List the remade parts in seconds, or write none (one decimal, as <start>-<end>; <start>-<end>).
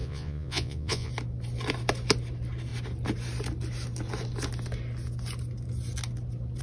0.0-1.1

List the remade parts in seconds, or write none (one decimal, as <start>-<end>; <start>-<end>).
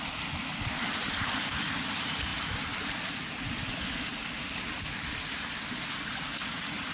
2.3-2.9